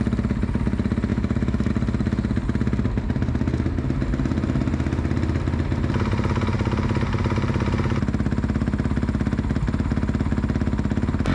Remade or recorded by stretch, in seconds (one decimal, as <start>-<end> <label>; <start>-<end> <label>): 0.0-1.1 recorded; 1.1-1.7 remade; 1.7-11.3 recorded